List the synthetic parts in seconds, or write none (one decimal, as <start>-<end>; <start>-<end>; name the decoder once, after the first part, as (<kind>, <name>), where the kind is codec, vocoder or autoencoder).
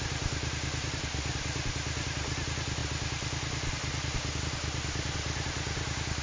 none